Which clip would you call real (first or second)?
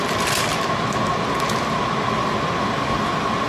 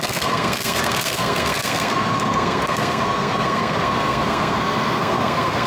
first